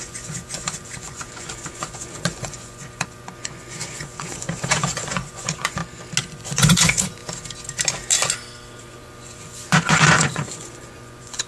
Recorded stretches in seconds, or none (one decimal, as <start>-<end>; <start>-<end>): 5.8-6.3; 7.2-8.8